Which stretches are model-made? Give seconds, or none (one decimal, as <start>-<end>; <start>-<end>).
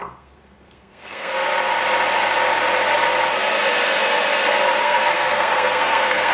0.0-1.3; 4.8-6.3